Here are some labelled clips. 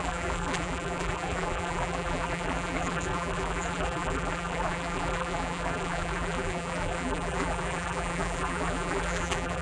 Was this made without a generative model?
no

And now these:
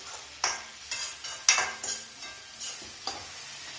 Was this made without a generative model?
yes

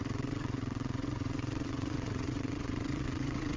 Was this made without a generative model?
no